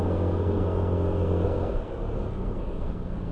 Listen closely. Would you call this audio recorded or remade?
remade